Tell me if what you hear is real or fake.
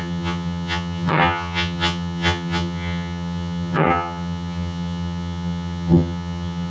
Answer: fake